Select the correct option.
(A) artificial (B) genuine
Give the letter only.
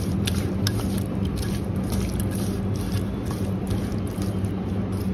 B